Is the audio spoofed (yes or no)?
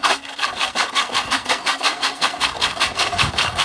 yes